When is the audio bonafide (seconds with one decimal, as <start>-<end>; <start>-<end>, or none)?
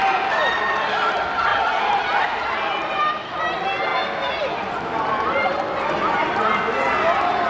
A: 0.0-7.5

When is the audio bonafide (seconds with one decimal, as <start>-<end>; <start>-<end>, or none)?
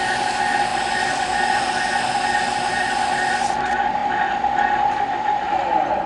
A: 0.0-6.1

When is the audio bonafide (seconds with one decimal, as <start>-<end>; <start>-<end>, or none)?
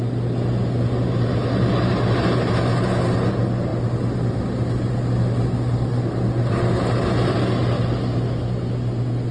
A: 0.0-9.3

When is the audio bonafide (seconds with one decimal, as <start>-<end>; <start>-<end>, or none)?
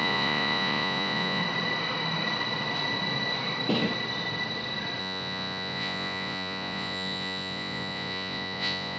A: 1.4-5.0